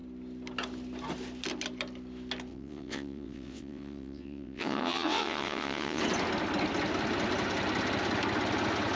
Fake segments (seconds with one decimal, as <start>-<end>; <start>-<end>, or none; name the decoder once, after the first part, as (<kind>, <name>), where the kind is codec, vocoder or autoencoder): 2.5-6.0 (vocoder, WaveNeXt)